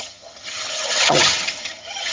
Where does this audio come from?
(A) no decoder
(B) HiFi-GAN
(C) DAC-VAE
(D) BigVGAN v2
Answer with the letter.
B